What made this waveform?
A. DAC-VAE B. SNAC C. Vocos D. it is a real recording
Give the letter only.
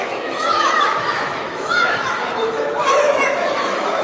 A